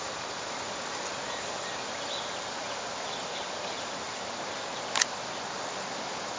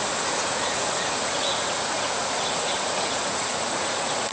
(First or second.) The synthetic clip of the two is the second